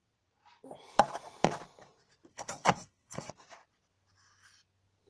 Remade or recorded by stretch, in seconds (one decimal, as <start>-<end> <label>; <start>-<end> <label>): 0.0-2.3 recorded; 2.3-3.3 remade; 3.3-5.1 recorded